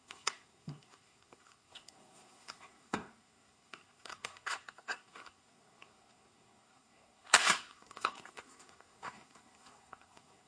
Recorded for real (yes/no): no